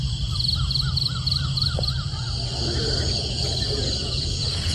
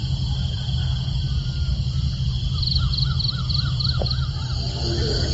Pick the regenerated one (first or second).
first